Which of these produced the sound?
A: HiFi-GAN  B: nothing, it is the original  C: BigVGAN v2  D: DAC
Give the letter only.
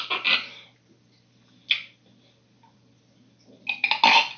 B